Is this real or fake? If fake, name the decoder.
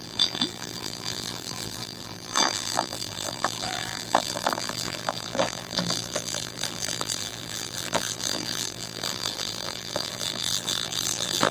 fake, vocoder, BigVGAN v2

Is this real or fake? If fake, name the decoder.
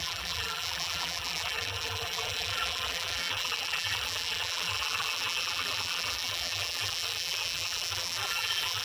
fake, vocoder, BigVGAN v2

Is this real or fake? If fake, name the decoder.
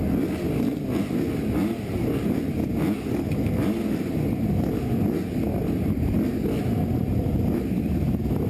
real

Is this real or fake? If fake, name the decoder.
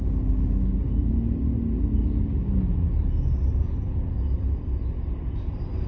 real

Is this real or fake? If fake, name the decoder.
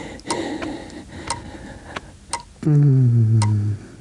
real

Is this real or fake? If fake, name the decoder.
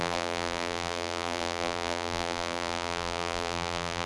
fake, vocoder, BigVGAN v2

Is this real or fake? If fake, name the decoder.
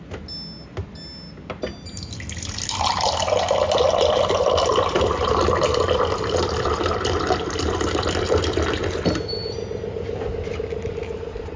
real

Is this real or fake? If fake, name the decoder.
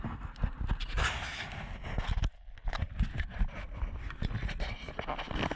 real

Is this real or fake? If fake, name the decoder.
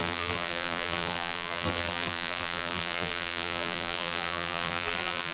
fake, vocoder, BigVGAN v2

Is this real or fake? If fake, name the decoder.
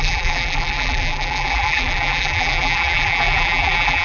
fake, vocoder, BigVGAN v2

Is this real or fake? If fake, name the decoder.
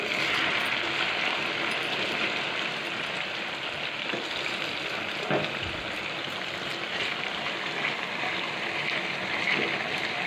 fake, vocoder, BigVGAN v2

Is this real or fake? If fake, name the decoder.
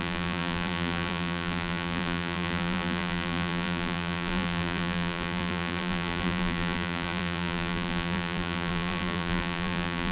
fake, vocoder, BigVGAN v2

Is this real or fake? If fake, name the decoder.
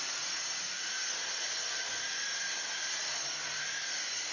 real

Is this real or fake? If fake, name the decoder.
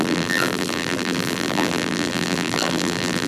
fake, vocoder, BigVGAN v2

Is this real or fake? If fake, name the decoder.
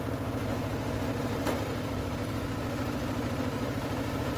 fake, vocoder, BigVGAN v2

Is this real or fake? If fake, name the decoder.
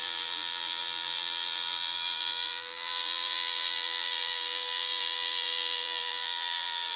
fake, vocoder, BigVGAN v2